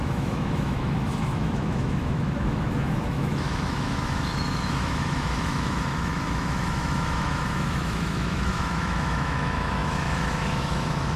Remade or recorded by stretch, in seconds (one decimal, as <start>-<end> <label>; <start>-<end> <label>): 0.0-11.2 remade